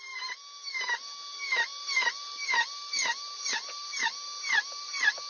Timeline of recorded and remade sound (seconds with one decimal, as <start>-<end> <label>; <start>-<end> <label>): 0.0-5.3 recorded